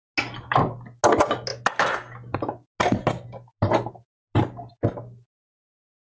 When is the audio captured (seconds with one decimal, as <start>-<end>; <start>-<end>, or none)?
0.0-6.1